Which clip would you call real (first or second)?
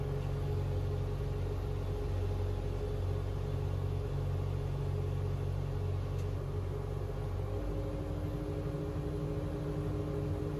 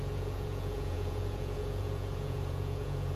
first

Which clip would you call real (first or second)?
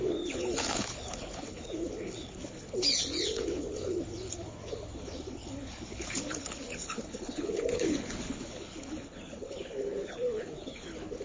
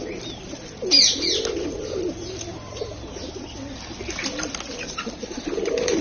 second